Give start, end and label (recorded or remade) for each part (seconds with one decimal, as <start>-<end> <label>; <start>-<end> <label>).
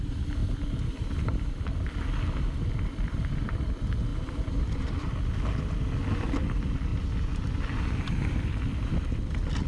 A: 0.0-9.7 recorded